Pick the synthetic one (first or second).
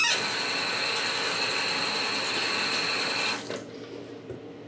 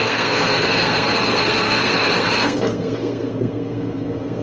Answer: second